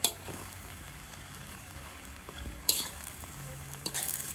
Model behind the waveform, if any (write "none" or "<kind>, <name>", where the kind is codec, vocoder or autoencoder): codec, DAC